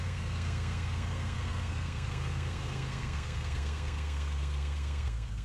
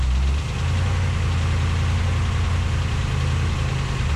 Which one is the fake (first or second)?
first